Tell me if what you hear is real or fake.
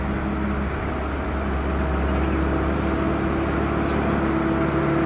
real